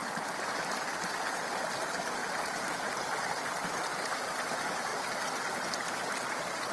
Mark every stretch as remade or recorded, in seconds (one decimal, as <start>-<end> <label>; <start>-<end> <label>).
0.0-6.7 recorded